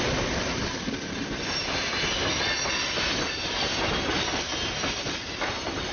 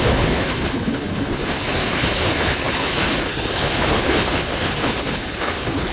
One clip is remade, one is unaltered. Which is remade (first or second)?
second